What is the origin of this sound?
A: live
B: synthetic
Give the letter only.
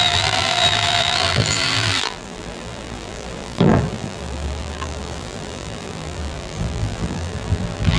B